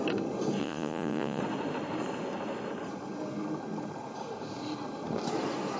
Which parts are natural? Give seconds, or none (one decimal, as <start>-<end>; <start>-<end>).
0.0-0.6; 1.4-5.8